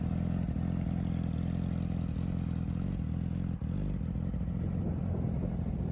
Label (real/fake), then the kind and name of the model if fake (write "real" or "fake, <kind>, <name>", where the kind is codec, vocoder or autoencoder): real